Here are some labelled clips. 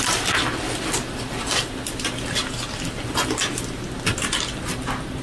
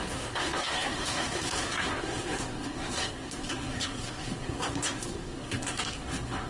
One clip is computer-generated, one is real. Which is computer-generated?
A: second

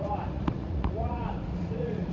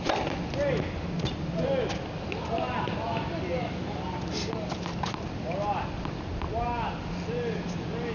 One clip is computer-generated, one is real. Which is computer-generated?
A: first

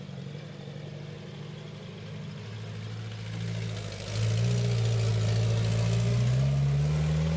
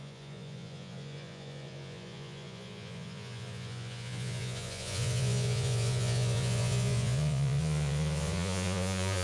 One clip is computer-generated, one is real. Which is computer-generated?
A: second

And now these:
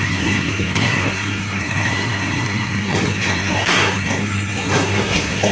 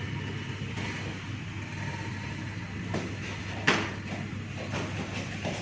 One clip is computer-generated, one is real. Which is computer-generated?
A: first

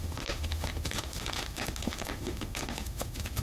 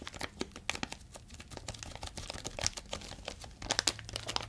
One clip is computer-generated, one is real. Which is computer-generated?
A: first